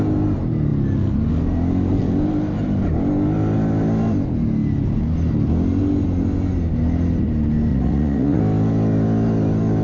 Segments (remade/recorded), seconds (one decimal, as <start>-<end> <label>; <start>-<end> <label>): 0.0-7.7 recorded; 7.7-8.4 remade; 8.4-9.8 recorded